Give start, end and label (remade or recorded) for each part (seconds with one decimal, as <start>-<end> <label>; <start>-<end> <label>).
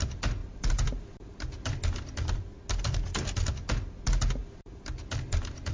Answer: 0.0-0.4 recorded; 0.4-1.8 remade; 1.8-4.4 recorded; 4.4-5.7 remade